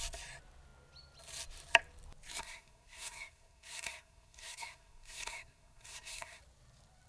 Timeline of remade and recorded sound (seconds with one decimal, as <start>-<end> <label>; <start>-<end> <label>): 0.0-2.4 recorded; 2.4-6.4 remade; 6.4-7.1 recorded